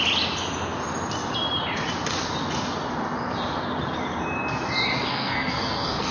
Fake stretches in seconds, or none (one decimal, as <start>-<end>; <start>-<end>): 5.1-6.1